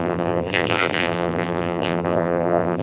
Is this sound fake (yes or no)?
yes